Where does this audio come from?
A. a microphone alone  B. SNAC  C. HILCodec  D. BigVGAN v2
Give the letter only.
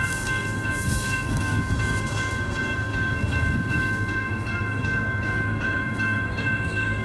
B